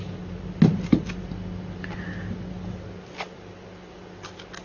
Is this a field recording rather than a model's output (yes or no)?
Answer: yes